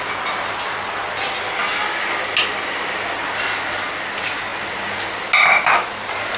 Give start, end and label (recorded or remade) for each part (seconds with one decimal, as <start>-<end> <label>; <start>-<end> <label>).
0.0-6.4 recorded